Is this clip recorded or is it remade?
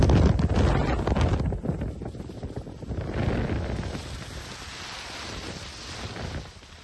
recorded